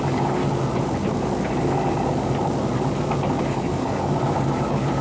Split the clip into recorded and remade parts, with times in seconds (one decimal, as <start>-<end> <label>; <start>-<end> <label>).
0.0-0.4 remade; 0.4-3.4 recorded; 3.4-5.0 remade